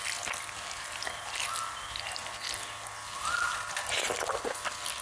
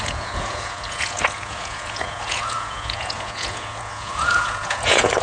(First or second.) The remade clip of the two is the second